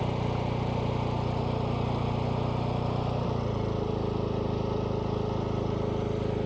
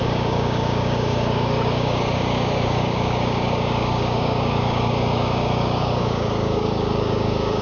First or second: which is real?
first